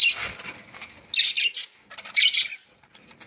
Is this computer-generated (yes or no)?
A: no